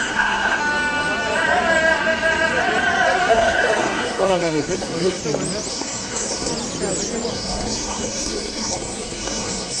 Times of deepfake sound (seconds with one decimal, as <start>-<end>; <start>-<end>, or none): 0.0-0.6; 3.3-5.2; 5.7-6.5; 7.3-9.8